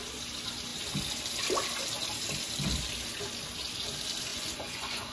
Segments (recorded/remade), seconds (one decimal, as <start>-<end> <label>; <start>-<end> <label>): 0.0-4.3 recorded; 4.3-5.1 remade